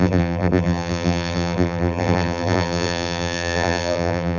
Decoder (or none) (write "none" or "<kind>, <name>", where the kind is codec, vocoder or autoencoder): vocoder, BigVGAN v2